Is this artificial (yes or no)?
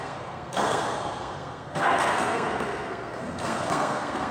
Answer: yes